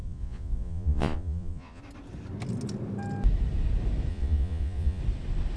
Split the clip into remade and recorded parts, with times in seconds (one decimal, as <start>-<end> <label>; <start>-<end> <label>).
0.0-1.8 remade; 1.8-4.1 recorded; 4.1-5.0 remade; 5.0-5.6 recorded